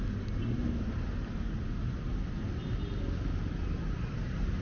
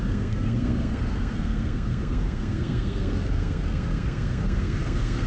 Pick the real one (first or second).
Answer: first